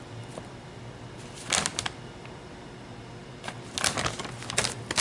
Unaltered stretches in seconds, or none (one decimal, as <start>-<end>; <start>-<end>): 0.0-1.7; 2.4-5.0